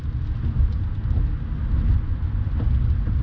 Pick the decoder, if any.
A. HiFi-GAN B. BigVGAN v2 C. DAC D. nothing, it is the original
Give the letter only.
D